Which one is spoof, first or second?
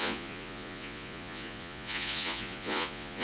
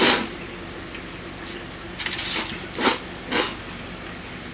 first